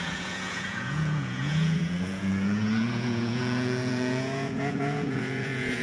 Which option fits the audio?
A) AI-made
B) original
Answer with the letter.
A